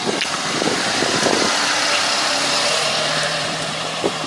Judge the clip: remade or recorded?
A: remade